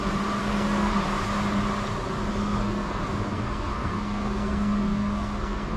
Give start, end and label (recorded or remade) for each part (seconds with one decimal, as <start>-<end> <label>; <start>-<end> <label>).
0.0-0.4 recorded; 0.4-0.9 remade; 0.9-2.3 recorded; 2.3-5.8 remade